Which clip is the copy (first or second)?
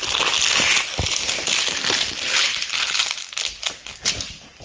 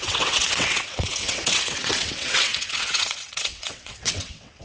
second